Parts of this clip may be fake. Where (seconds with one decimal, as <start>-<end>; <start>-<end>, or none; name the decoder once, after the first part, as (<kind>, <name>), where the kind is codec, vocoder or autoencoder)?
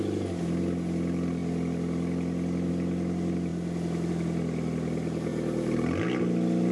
none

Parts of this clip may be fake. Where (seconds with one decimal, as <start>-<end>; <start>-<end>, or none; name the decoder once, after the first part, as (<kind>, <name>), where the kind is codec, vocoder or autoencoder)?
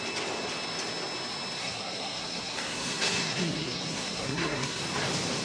1.6-4.8 (codec, SNAC)